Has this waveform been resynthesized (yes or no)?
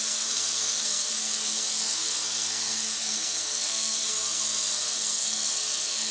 yes